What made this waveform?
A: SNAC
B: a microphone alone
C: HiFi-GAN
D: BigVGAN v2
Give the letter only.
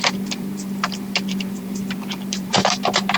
D